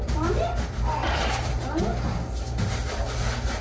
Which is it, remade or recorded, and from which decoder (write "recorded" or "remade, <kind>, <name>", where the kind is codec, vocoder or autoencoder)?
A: recorded